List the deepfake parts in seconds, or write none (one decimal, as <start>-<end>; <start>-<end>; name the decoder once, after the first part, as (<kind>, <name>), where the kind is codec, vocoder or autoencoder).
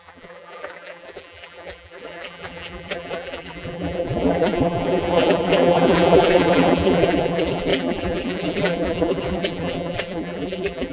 0.0-10.9 (vocoder, BigVGAN v2)